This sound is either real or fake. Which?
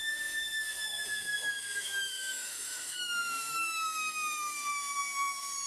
fake